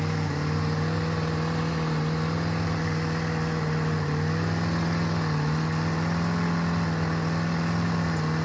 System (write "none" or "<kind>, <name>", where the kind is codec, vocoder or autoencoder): none